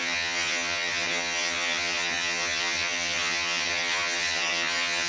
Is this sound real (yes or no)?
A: no